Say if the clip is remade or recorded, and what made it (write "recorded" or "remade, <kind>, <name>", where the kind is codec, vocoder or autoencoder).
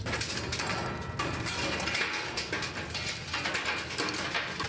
recorded